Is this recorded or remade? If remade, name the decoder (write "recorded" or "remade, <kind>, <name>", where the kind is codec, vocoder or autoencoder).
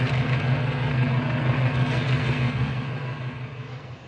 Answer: remade, codec, SNAC